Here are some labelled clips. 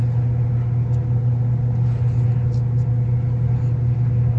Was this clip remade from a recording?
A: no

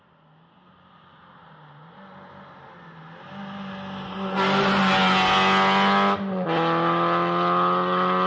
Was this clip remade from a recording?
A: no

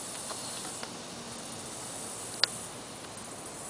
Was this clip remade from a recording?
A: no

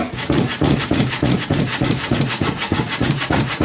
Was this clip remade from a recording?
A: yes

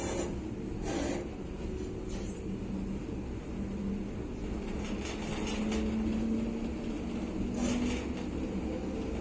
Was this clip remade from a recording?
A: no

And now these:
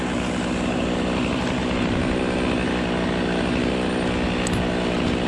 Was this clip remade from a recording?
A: no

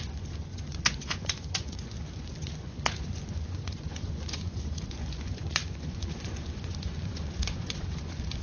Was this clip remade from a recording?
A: yes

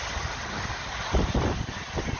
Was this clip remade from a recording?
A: no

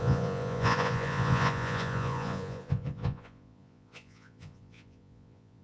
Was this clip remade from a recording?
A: yes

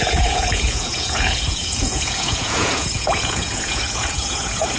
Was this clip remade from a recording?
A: yes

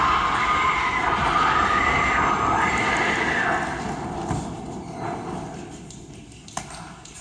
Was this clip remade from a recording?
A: no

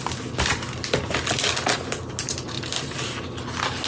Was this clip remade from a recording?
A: no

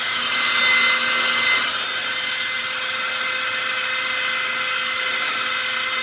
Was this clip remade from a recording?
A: no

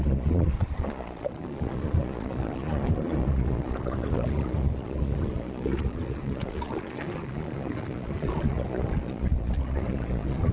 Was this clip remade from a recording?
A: yes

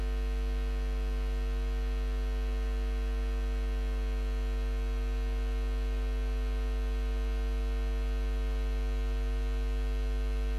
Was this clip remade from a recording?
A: no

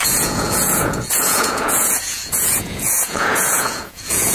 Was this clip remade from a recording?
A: yes